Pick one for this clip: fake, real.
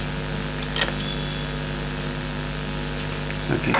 real